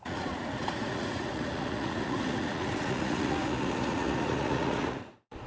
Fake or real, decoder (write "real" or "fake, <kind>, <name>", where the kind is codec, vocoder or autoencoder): fake, vocoder, Vocos